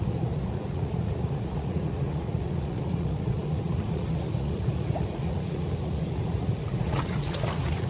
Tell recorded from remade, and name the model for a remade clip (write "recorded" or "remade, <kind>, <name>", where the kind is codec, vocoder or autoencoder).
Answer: remade, vocoder, Vocos